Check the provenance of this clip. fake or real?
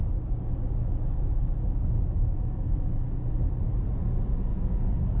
real